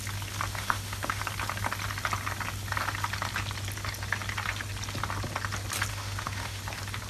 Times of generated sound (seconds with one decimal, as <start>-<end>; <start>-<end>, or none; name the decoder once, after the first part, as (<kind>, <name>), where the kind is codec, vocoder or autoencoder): 0.5-1.2 (autoencoder, DAC-VAE); 5.9-6.6